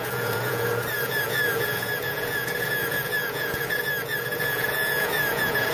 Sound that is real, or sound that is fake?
fake